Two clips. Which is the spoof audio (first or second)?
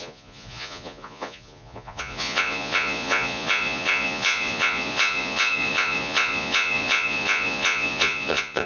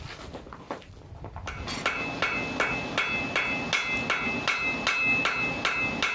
first